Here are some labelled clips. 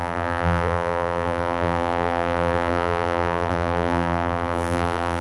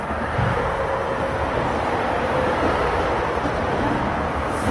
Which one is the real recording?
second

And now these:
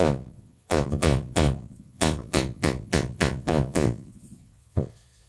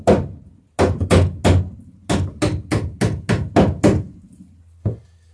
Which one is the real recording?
second